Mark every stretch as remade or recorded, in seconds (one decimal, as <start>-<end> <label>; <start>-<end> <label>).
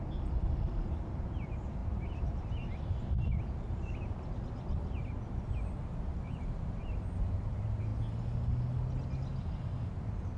0.0-10.4 recorded